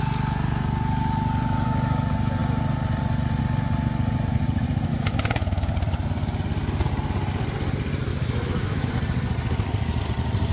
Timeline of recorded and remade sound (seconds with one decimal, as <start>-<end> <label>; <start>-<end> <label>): 0.0-4.9 recorded; 4.9-5.7 remade; 5.7-8.1 recorded; 8.1-8.9 remade; 8.9-10.5 recorded